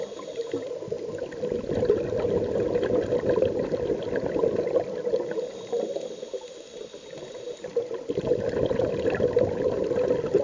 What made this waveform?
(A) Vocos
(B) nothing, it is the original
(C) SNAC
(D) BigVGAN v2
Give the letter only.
B